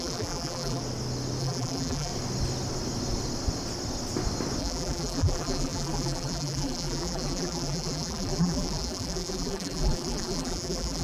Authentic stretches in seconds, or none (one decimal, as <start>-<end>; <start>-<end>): 0.8-1.4; 2.1-4.6